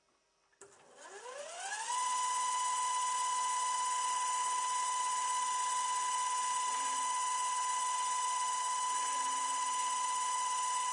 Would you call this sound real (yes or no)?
yes